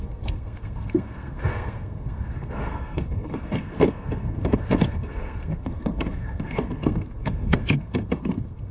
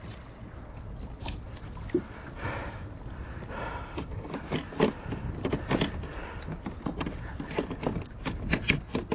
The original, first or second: second